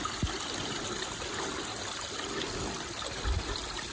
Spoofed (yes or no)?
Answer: no